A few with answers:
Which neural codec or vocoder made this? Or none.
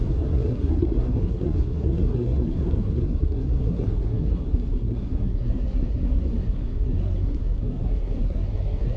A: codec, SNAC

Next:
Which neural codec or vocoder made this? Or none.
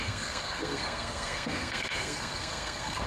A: codec, SNAC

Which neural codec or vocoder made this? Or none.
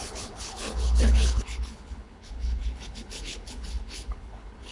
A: codec, HILCodec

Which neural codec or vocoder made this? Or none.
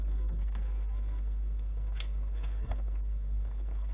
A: codec, SNAC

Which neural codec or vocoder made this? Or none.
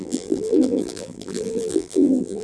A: vocoder, BigVGAN v2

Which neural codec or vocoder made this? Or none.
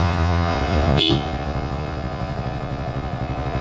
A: vocoder, Vocos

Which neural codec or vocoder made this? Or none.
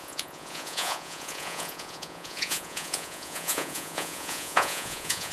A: vocoder, Vocos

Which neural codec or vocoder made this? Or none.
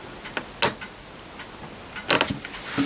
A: none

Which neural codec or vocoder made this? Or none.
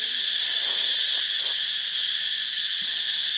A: none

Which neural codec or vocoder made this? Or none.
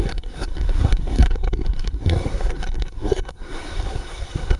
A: codec, SNAC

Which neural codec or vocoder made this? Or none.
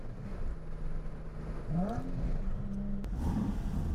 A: none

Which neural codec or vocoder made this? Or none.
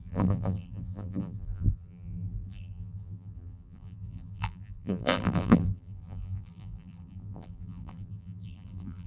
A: vocoder, BigVGAN v2